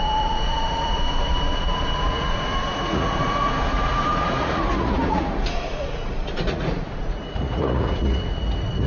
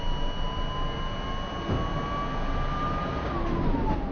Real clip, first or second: second